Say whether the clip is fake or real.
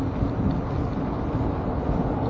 real